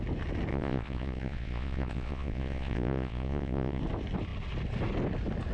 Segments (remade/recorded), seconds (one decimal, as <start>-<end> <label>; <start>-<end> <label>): 0.0-0.5 recorded; 0.5-3.8 remade; 3.8-5.5 recorded